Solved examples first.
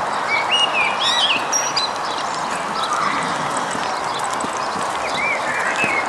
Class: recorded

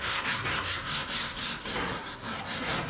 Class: remade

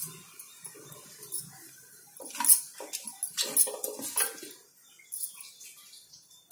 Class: recorded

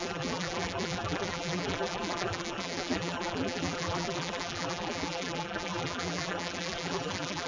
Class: remade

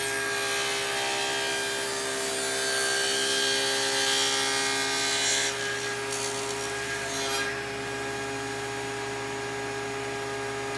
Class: recorded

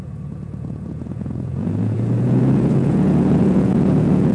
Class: remade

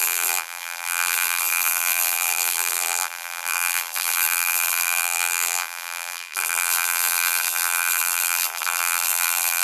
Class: remade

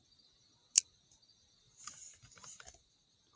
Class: recorded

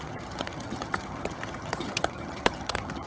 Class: remade